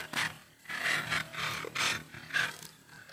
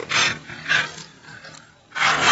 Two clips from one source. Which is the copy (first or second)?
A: first